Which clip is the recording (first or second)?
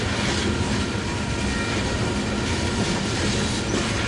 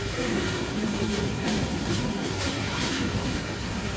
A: first